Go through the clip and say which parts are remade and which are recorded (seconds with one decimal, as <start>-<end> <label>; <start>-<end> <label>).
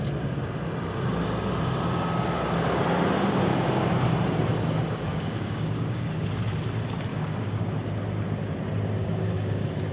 0.0-3.5 recorded; 3.5-4.1 remade; 4.1-5.1 recorded; 5.1-6.1 remade; 6.1-7.1 recorded; 7.1-7.6 remade; 7.6-9.0 recorded; 9.0-9.9 remade